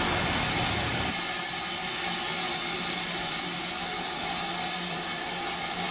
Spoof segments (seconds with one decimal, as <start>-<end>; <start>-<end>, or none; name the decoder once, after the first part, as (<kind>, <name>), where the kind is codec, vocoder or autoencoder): none